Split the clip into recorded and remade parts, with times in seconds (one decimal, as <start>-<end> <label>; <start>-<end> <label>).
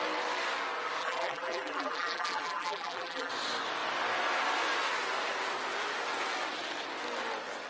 0.0-1.0 recorded; 1.0-3.3 remade; 3.3-7.7 recorded